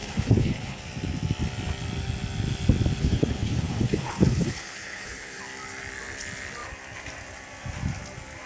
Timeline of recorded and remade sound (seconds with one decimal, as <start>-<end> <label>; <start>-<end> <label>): 0.0-0.8 remade; 0.8-3.0 recorded; 3.0-5.4 remade; 5.4-8.5 recorded